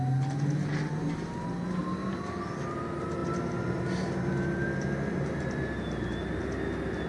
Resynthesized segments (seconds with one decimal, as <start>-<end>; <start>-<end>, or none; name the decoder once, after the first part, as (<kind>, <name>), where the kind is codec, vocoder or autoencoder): none